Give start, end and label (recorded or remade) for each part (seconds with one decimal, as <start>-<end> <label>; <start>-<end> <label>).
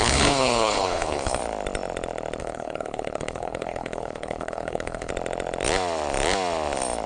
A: 0.0-1.4 remade; 1.4-2.4 recorded; 2.4-5.1 remade; 5.1-7.1 recorded